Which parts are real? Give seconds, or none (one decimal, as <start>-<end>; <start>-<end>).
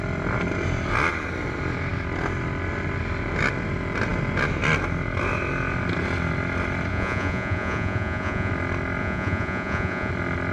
0.0-6.9; 8.5-9.0; 10.1-10.5